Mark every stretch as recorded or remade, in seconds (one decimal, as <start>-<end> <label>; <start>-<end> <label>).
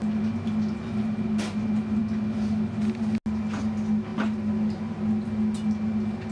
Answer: 0.0-6.3 recorded